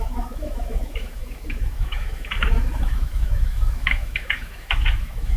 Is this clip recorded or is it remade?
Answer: remade